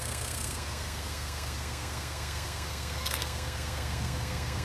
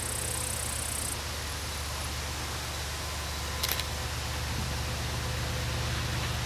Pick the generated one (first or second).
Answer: first